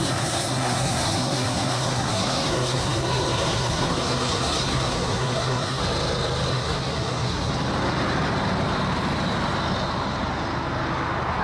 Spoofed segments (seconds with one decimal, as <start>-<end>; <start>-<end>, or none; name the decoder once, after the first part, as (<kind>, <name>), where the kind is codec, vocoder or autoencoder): 0.0-5.8 (codec, SNAC); 6.5-7.5